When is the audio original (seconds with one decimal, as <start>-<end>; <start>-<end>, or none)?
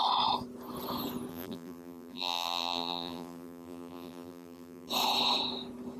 0.0-1.3; 4.9-6.0